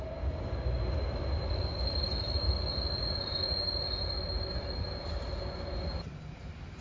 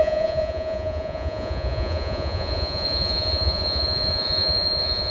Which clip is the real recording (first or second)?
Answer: first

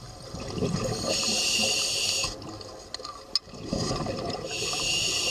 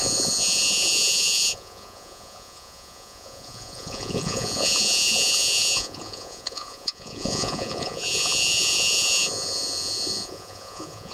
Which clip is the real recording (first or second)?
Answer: first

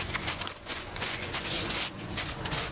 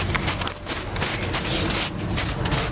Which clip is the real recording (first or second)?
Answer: second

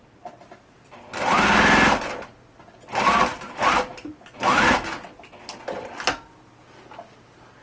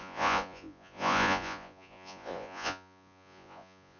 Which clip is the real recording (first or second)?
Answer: first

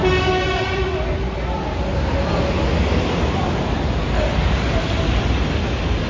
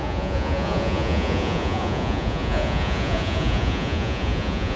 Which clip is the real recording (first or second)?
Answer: first